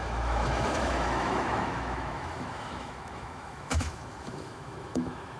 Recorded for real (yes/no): no